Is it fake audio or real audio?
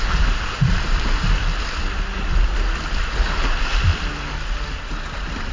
real